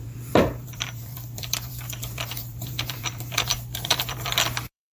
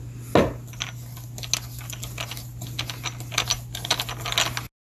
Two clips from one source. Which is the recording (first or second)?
second